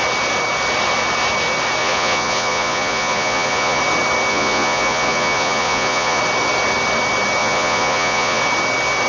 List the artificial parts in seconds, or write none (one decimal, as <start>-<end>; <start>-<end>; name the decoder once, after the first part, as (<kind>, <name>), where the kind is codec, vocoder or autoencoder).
1.8-3.8 (vocoder, Vocos); 4.3-6.2; 7.4-8.4